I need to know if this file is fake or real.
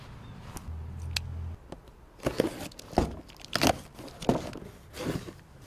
real